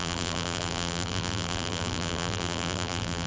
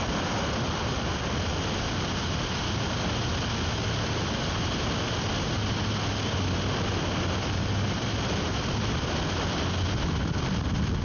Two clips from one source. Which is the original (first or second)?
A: second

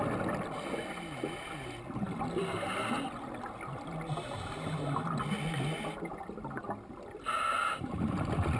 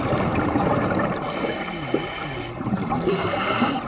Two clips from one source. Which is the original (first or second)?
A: first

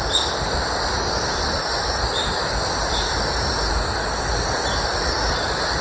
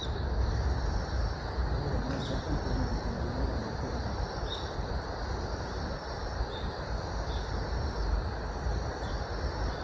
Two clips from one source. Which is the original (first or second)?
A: first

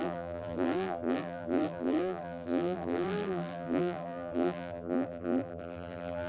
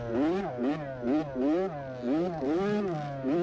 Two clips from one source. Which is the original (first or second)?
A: second